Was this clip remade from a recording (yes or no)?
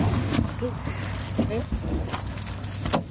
no